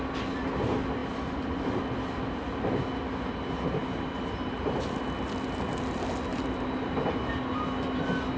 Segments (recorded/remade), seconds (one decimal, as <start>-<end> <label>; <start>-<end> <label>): 0.0-3.8 recorded; 3.8-5.0 remade; 5.0-6.3 recorded; 6.3-7.1 remade; 7.1-8.4 recorded